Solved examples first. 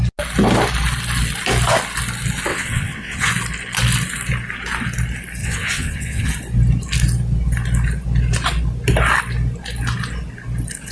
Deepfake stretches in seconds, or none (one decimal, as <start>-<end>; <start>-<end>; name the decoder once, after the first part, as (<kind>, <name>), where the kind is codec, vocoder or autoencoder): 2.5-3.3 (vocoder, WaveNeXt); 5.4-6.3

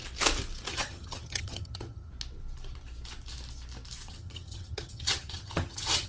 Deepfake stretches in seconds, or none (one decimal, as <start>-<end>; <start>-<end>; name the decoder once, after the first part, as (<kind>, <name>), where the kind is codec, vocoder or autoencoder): 0.7-2.1 (vocoder, HiFi-GAN); 4.1-6.1

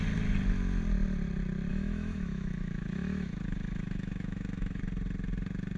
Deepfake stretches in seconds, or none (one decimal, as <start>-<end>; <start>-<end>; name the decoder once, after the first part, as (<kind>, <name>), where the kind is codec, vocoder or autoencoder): 1.7-4.8 (autoencoder, DAC-VAE)